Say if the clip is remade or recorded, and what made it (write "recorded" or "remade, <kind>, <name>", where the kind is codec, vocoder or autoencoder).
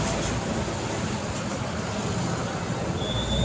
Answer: recorded